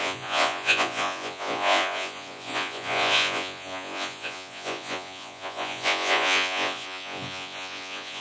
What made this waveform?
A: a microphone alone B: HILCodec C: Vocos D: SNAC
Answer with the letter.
C